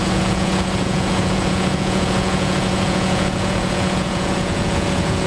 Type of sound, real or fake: fake